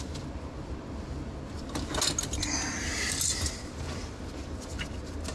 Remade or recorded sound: recorded